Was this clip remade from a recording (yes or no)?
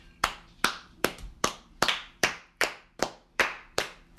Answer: yes